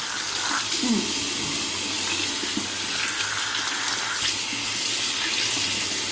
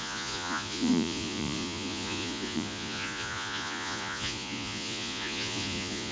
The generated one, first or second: second